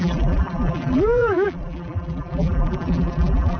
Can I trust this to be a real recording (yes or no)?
no